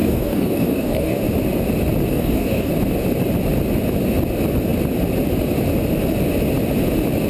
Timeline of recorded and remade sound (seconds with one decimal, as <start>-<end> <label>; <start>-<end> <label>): 0.0-1.2 remade; 1.2-2.1 recorded; 2.1-2.7 remade; 2.7-7.3 recorded